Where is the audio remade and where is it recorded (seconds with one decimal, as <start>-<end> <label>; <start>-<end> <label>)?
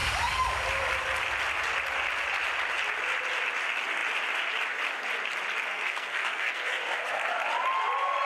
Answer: 0.0-5.7 recorded; 5.7-7.3 remade; 7.3-8.3 recorded